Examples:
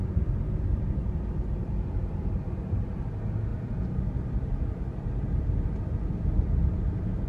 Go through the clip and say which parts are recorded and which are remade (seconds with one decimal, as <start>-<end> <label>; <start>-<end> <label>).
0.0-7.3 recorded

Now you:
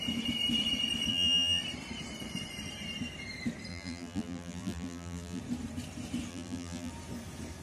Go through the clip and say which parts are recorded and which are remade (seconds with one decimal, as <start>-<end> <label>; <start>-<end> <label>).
0.0-1.1 recorded; 1.1-1.6 remade; 1.6-3.7 recorded; 3.7-5.4 remade; 5.4-6.3 recorded; 6.3-6.9 remade; 6.9-7.6 recorded

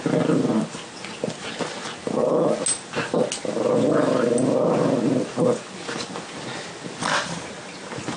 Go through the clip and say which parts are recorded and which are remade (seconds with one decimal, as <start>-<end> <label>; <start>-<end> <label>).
0.0-8.2 recorded